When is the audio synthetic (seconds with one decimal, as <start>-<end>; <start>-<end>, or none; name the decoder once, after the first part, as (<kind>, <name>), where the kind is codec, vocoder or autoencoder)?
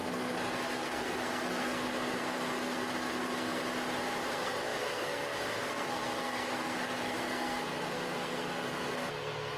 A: 0.0-3.6 (codec, SNAC); 4.3-9.6